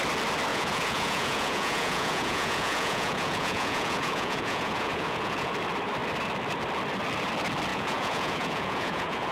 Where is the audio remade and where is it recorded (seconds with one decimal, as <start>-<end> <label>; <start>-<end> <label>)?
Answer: 0.0-0.5 recorded; 0.5-5.5 remade; 5.5-7.7 recorded; 7.7-9.3 remade